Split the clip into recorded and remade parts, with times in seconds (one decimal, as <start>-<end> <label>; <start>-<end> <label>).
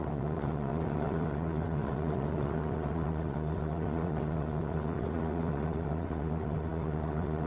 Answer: 0.0-7.5 remade